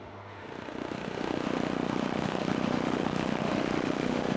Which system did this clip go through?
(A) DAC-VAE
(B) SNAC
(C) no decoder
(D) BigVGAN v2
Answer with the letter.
A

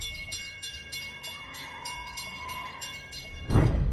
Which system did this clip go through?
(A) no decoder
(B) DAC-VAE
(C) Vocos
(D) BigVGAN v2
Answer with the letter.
B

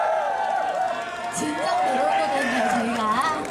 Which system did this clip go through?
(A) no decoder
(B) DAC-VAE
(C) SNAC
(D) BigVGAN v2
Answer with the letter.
A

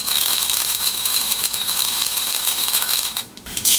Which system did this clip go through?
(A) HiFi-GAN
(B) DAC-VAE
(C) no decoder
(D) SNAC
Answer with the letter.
B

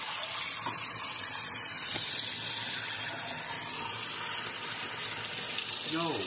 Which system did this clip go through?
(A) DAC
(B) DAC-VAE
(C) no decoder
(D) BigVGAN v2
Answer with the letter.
C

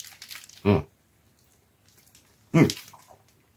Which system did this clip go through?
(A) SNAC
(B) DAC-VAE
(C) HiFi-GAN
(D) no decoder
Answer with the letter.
D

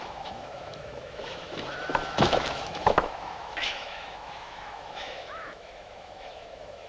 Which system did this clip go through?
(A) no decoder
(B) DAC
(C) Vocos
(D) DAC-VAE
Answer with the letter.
D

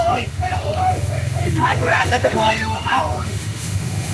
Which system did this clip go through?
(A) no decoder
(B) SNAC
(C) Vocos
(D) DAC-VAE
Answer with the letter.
D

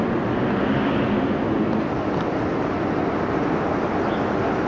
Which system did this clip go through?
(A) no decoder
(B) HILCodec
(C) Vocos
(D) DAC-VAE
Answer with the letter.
A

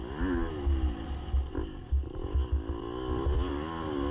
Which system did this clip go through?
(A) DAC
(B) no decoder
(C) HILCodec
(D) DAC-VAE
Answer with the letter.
B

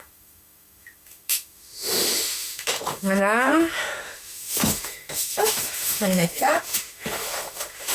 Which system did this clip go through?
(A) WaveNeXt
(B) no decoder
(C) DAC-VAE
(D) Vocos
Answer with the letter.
C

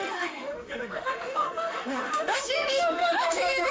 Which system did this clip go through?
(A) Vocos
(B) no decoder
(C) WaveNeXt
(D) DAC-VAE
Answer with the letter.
D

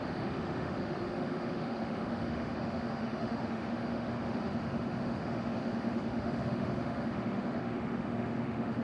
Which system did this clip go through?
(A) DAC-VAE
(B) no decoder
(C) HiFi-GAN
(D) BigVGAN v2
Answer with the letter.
A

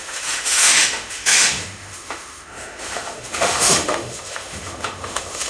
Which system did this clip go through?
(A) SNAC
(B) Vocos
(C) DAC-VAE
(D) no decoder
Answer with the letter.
C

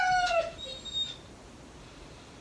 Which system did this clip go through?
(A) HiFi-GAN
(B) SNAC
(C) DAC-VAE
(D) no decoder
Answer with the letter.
D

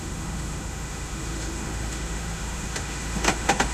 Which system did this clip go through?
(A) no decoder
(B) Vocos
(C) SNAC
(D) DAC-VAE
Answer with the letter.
D